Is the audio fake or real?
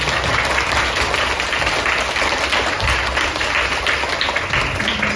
real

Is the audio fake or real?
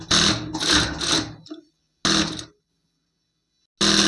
real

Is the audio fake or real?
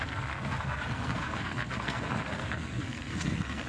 fake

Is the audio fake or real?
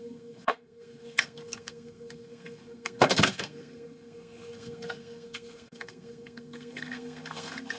fake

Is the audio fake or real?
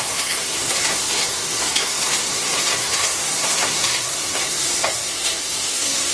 fake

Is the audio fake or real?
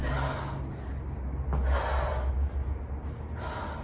real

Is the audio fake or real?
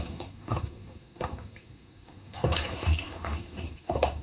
fake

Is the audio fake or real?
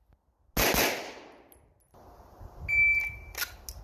real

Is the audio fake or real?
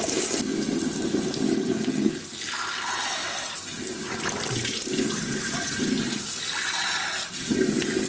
real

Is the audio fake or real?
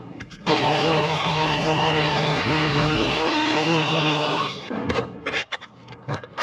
fake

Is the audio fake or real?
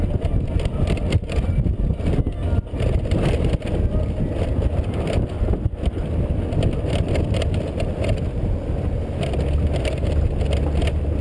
real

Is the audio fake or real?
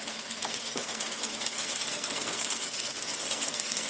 fake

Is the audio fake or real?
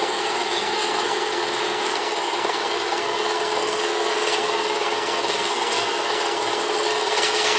fake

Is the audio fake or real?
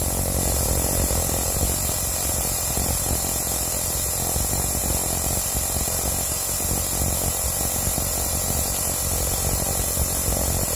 real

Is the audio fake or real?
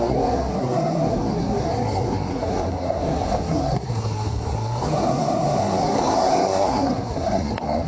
fake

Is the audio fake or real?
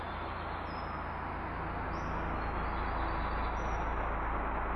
real